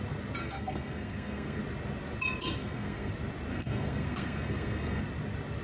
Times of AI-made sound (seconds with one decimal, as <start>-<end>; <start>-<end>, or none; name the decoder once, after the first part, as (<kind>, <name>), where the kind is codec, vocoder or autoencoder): 0.4-1.6 (codec, SNAC); 2.6-3.1; 3.5-5.0